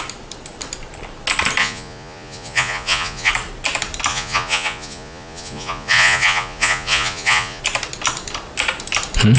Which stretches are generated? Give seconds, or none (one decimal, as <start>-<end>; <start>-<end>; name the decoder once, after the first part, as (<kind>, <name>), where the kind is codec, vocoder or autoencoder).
1.6-3.3 (vocoder, Vocos); 4.1-7.6